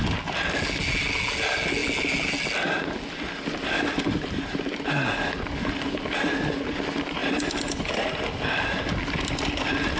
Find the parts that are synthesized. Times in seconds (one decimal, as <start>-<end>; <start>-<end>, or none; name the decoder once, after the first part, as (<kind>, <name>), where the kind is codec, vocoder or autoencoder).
none